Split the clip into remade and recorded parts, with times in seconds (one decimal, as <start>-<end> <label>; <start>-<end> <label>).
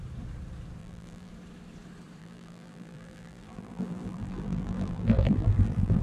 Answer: 0.0-0.8 recorded; 0.8-1.3 remade; 1.3-2.2 recorded; 2.2-6.0 remade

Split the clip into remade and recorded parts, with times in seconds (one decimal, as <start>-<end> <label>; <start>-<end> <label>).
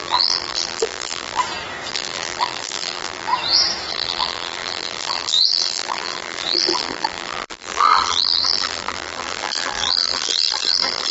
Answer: 0.0-1.4 remade; 1.4-1.9 recorded; 1.9-3.3 remade; 3.3-3.9 recorded; 3.9-11.1 remade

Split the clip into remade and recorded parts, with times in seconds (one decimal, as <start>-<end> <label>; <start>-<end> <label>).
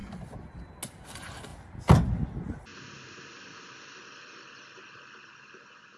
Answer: 0.0-6.0 recorded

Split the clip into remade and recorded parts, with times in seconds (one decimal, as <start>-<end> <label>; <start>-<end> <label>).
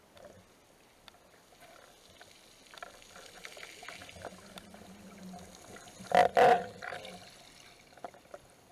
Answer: 0.0-8.7 recorded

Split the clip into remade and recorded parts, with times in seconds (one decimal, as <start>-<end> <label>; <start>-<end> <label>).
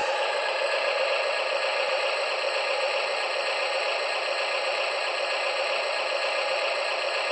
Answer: 0.0-1.1 remade; 1.1-1.7 recorded; 1.7-2.3 remade; 2.3-7.3 recorded